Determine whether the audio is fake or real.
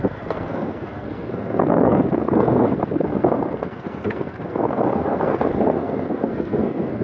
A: fake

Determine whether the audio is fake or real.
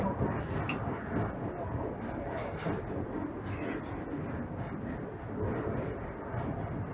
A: real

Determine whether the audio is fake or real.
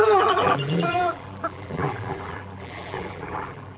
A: fake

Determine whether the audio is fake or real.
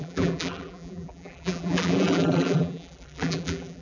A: fake